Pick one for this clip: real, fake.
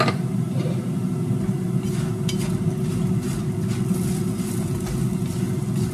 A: real